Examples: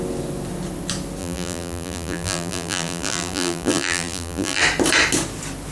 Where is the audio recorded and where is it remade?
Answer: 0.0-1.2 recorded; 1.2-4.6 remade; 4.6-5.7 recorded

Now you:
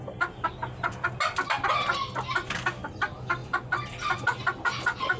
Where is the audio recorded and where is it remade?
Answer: 0.0-5.2 recorded